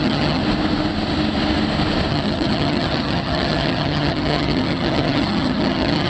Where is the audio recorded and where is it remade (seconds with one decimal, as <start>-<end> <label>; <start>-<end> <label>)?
0.0-0.4 remade; 0.4-2.1 recorded; 2.1-6.1 remade